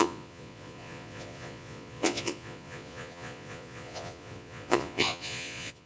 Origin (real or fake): fake